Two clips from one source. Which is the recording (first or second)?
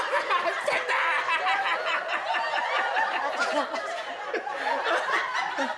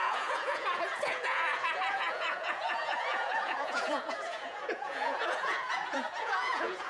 first